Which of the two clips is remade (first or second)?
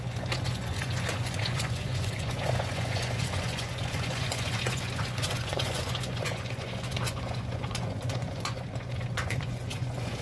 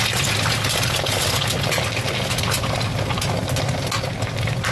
first